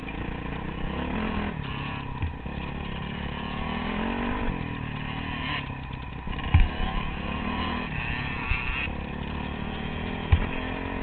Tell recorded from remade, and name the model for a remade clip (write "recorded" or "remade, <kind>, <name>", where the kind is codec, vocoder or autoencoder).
recorded